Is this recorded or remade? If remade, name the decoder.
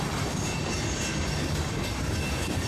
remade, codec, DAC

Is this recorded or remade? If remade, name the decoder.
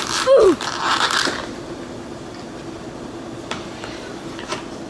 recorded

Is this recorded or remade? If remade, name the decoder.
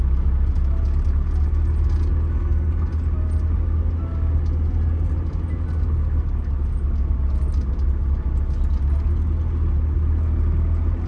recorded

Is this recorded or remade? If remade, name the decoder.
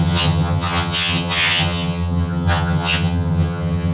remade, vocoder, HiFi-GAN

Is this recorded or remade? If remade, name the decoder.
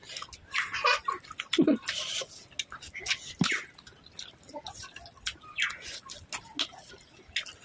recorded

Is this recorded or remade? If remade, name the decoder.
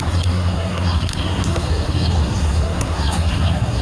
remade, codec, SNAC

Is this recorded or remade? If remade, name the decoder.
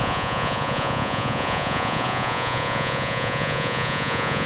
remade, vocoder, Vocos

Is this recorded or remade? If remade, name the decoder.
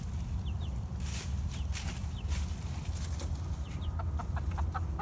recorded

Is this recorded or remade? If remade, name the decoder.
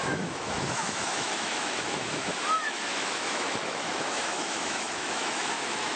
remade, autoencoder, DAC-VAE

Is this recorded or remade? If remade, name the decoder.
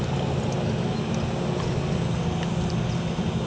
recorded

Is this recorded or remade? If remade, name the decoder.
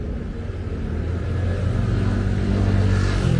recorded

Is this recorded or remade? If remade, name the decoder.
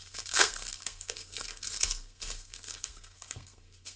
remade, codec, SNAC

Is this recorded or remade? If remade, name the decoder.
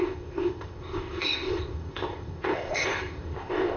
remade, codec, ZipCodec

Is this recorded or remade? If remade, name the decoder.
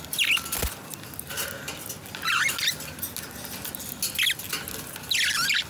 recorded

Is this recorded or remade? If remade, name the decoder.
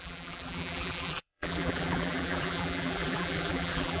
remade, vocoder, BigVGAN v2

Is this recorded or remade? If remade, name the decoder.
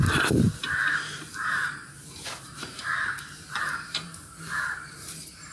remade, vocoder, BigVGAN v2